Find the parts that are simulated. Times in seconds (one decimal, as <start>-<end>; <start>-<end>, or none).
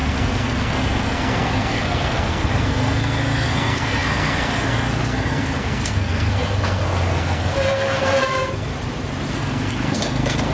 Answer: 0.0-8.7; 9.3-10.5